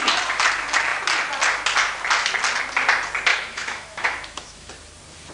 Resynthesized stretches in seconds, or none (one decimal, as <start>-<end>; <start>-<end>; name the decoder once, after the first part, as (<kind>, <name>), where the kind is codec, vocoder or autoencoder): 3.3-4.7 (autoencoder, DAC-VAE)